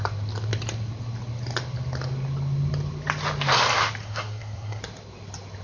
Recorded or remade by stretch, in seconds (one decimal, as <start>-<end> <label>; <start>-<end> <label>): 0.0-4.0 recorded; 4.0-4.8 remade; 4.8-5.6 recorded